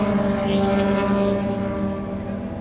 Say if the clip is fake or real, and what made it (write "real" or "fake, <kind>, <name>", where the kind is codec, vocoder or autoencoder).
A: real